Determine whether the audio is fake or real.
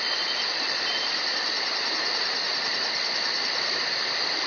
real